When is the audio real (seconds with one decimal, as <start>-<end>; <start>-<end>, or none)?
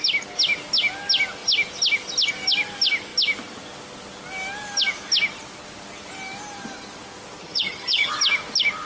0.0-7.4; 8.1-8.9